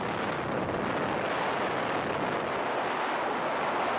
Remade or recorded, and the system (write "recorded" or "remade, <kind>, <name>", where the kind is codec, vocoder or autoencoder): recorded